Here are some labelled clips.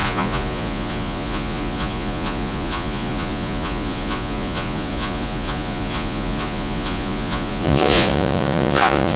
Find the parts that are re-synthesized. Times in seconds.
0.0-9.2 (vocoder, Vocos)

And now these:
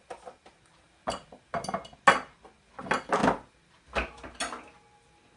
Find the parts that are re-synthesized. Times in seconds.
none